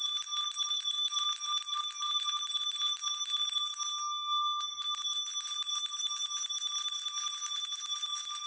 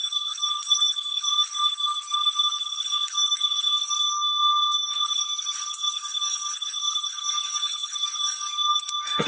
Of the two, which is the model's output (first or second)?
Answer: second